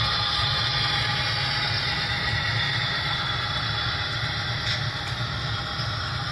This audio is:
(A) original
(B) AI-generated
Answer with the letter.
A